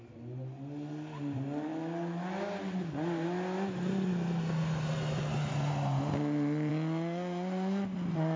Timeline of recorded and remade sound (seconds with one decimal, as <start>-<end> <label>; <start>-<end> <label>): 0.0-8.4 recorded

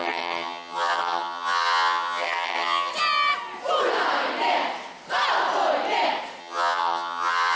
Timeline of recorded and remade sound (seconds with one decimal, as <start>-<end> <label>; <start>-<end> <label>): 0.0-2.9 remade; 2.9-6.4 recorded; 6.4-7.6 remade

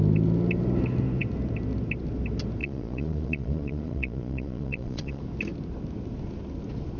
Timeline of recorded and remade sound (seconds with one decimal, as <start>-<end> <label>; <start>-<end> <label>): 0.0-2.6 recorded; 2.6-5.2 remade; 5.2-7.0 recorded